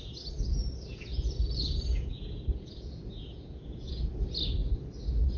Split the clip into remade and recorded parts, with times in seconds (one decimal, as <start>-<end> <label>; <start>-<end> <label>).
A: 0.0-0.9 recorded; 0.9-4.1 remade; 4.1-5.4 recorded